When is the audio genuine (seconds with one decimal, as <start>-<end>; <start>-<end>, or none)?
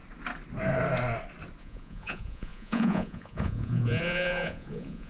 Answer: 0.0-1.6